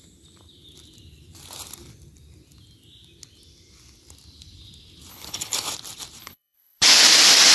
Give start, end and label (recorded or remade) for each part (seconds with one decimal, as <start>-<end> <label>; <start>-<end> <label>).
0.0-5.1 recorded; 5.1-5.7 remade; 5.7-6.2 recorded; 6.2-7.0 remade; 7.0-7.5 recorded